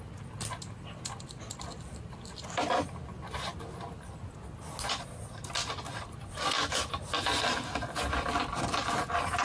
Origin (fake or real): real